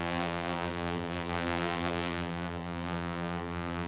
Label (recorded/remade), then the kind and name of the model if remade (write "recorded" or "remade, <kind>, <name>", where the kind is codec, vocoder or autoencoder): remade, vocoder, BigVGAN v2